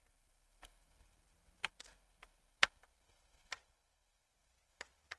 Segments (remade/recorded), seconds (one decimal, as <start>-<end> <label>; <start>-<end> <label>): 0.0-4.1 recorded; 4.1-5.2 remade